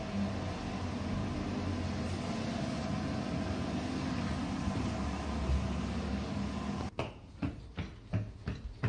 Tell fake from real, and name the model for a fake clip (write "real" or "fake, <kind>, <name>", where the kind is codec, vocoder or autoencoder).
real